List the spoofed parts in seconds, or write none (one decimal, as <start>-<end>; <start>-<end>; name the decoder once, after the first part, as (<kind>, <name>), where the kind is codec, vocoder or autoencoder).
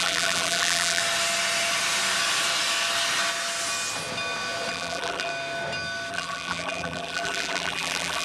0.0-1.0 (vocoder, BigVGAN v2); 4.7-5.3; 6.1-8.2